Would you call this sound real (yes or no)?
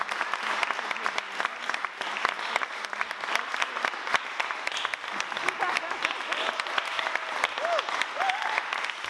yes